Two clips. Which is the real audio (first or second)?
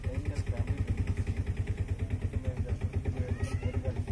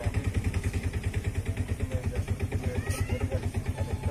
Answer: first